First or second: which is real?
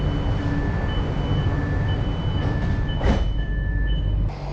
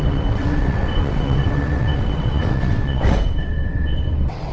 first